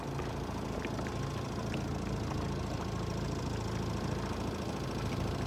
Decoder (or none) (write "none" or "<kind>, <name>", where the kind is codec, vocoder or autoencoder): none